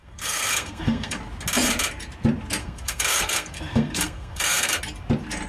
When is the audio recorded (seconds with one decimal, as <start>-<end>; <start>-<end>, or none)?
1.2-2.6; 4.8-5.5